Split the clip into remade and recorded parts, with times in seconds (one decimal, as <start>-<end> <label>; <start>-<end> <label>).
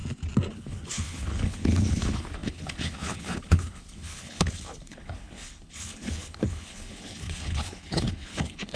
0.0-0.5 recorded; 0.5-8.8 remade